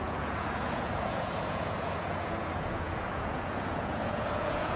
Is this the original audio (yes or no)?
no